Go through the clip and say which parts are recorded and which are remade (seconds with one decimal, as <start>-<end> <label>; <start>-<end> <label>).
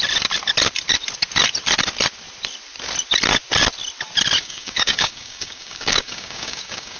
0.0-4.4 recorded; 4.4-7.0 remade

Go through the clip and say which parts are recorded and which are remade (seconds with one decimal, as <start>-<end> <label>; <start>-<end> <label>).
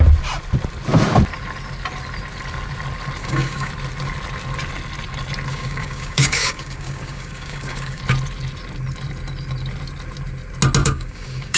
0.0-3.2 recorded; 3.2-3.7 remade; 3.7-5.5 recorded; 5.5-8.0 remade; 8.0-10.8 recorded; 10.8-11.6 remade